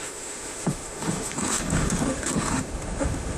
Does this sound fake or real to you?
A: fake